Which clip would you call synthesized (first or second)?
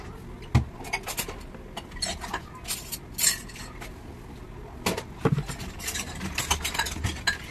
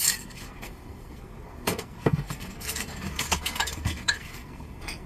second